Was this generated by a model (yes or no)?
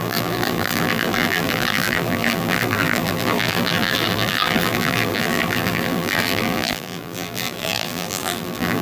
yes